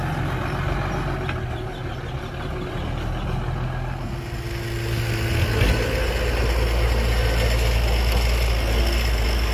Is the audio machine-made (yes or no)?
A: no